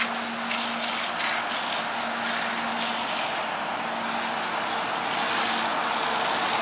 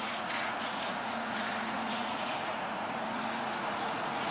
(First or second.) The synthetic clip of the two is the second